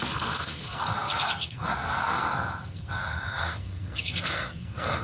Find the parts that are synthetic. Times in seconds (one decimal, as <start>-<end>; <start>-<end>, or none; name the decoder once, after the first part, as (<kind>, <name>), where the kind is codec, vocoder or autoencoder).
0.0-5.0 (codec, SNAC)